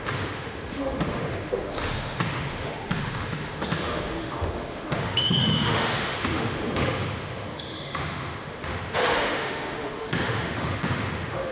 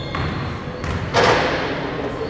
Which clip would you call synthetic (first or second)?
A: first